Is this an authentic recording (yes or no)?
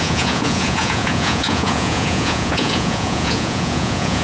no